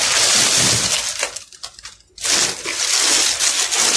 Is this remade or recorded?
recorded